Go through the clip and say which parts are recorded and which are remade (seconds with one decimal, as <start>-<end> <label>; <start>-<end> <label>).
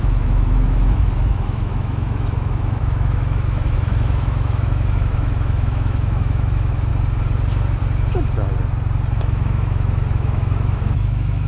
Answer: 0.0-6.9 remade; 6.9-9.2 recorded; 9.2-11.5 remade